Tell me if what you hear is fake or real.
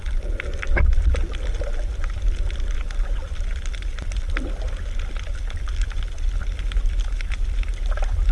real